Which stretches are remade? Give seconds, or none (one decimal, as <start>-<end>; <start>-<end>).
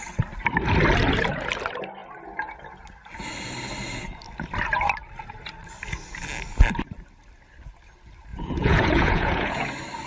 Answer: 8.3-9.7